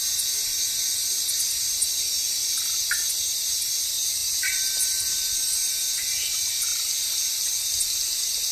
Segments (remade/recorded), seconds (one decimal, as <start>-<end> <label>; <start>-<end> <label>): 0.0-4.2 recorded; 4.2-5.3 remade; 5.3-8.5 recorded